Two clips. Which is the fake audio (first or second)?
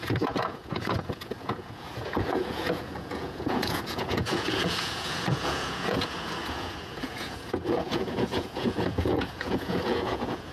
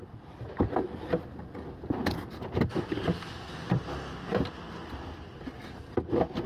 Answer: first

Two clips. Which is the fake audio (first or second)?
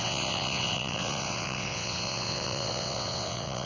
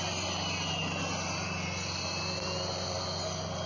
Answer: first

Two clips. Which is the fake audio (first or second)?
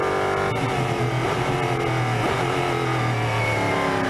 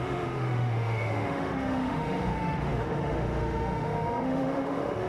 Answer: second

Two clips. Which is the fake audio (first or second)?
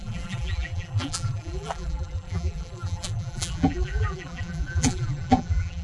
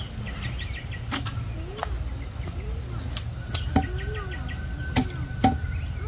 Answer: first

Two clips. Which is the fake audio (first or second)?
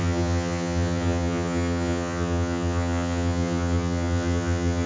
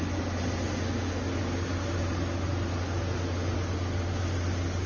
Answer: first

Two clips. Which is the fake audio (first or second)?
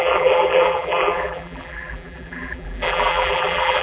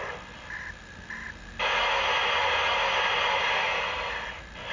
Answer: first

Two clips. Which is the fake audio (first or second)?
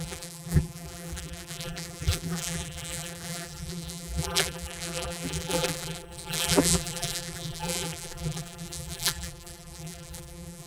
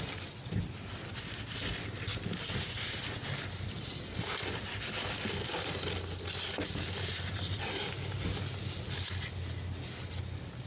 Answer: first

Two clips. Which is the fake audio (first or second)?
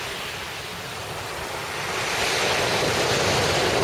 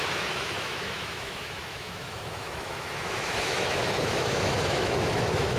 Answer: second